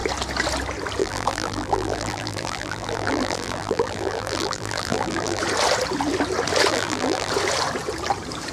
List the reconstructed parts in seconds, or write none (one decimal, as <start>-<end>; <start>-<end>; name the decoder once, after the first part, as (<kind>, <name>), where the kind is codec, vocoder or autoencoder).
1.0-5.4 (vocoder, BigVGAN v2); 6.7-7.3